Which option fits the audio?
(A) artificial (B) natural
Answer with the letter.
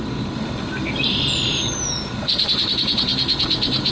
A